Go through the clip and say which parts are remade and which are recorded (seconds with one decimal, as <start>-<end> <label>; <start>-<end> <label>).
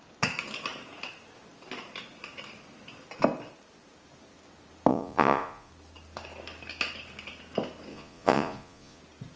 0.0-4.9 recorded; 4.9-5.7 remade; 5.7-7.9 recorded; 7.9-9.0 remade; 9.0-9.4 recorded